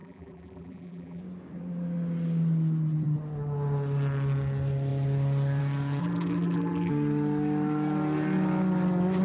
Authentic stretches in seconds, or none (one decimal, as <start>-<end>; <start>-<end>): 1.2-6.0; 6.9-9.2